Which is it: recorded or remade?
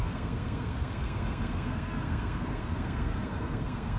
remade